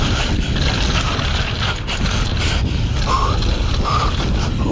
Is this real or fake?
real